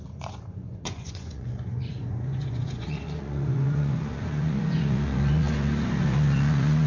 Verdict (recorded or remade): remade